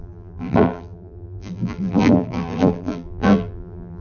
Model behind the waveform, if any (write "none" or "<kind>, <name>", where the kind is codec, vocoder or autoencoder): vocoder, BigVGAN v2